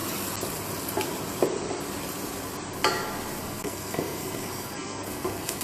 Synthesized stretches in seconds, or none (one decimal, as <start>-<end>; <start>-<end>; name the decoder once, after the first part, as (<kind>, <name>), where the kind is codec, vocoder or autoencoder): 3.4-5.6 (codec, SNAC)